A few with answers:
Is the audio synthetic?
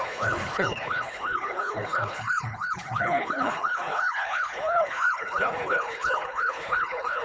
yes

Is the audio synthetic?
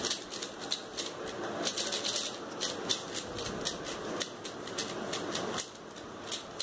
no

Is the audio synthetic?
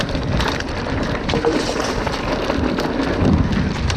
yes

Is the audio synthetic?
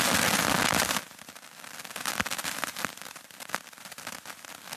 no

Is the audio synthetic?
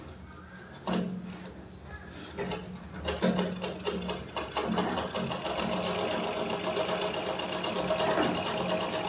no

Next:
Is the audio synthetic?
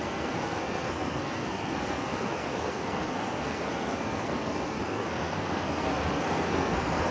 yes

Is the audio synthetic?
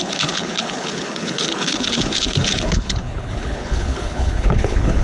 yes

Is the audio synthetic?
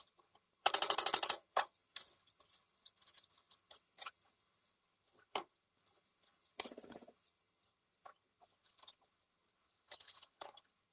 yes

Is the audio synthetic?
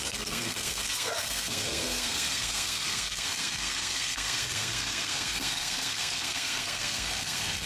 yes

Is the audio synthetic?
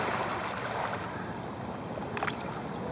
no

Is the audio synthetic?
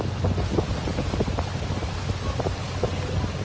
no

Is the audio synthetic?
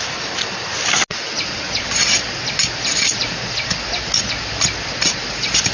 no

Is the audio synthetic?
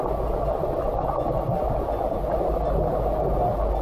no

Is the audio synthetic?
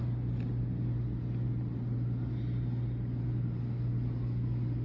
no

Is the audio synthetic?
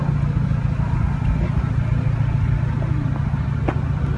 no